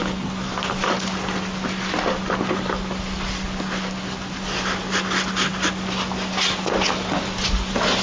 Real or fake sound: real